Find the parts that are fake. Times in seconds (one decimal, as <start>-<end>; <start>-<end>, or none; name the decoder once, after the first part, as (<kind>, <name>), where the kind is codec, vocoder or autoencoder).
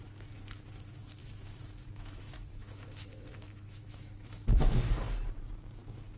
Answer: 1.2-4.9 (autoencoder, DAC-VAE)